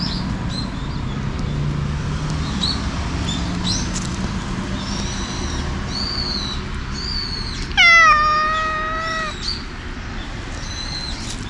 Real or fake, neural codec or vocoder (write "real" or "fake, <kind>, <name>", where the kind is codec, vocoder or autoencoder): real